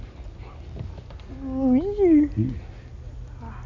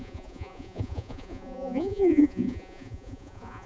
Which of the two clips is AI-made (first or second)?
second